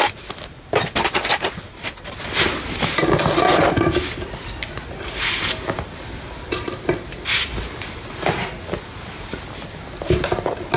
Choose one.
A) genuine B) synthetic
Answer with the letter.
A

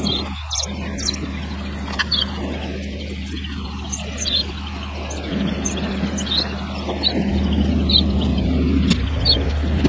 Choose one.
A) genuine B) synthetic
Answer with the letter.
A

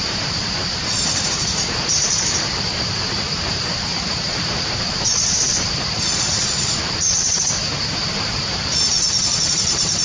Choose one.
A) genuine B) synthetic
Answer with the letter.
B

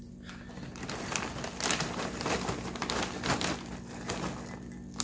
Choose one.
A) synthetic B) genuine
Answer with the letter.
B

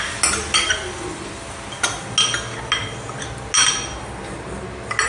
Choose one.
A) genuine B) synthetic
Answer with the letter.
A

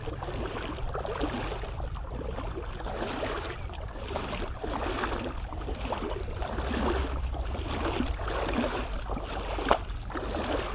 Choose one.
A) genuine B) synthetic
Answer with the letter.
A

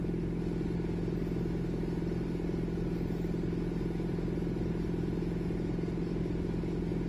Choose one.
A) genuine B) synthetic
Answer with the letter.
A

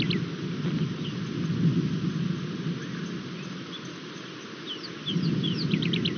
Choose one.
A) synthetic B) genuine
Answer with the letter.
B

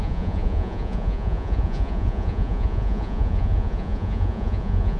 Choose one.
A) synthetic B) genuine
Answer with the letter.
A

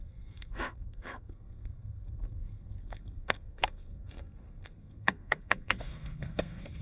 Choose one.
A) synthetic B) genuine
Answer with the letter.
A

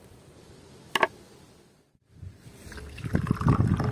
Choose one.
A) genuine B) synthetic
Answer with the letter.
A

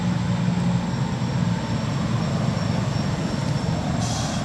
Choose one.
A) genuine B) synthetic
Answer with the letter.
A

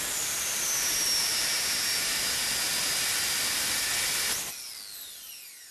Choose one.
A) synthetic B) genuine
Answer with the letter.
B